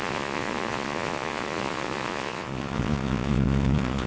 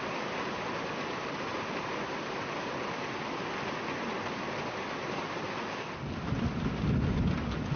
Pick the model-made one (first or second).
first